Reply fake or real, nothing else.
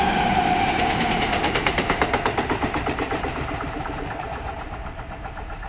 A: fake